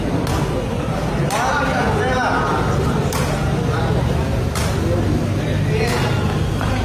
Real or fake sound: real